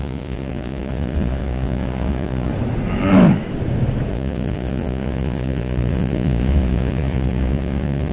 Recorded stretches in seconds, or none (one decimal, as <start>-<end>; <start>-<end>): 2.5-4.1